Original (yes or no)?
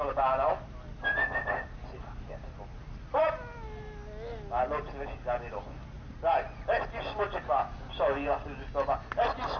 yes